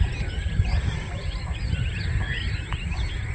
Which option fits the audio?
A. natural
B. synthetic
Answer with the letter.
A